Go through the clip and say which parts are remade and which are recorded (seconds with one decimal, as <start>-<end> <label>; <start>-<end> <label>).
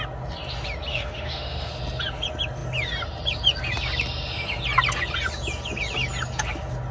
0.0-0.9 recorded; 0.9-1.7 remade; 1.7-6.9 recorded